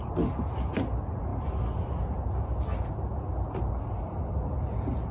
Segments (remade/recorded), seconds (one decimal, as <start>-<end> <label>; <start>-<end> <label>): 0.0-5.1 recorded